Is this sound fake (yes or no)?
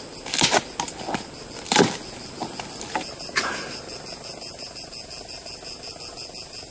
no